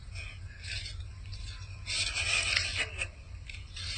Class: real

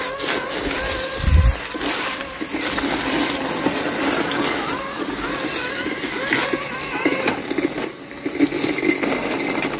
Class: real